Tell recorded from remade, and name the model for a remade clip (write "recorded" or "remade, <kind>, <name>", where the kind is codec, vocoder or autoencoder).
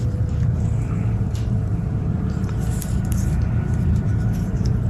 remade, vocoder, BigVGAN v2